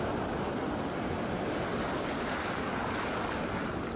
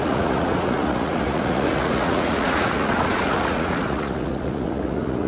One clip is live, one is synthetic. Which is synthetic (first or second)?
second